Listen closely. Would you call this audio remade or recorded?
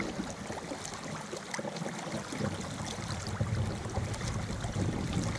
recorded